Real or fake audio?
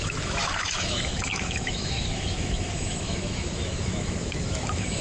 fake